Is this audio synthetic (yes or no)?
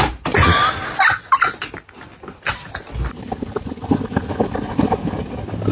no